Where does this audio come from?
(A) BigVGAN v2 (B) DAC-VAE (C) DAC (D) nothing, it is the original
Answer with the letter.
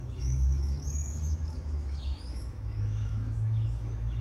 B